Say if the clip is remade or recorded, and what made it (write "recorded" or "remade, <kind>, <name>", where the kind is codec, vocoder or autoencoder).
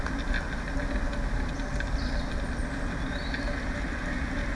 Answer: recorded